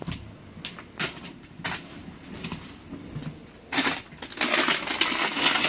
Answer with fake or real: real